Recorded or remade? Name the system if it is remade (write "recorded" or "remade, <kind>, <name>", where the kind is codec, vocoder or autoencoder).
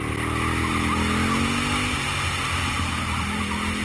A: recorded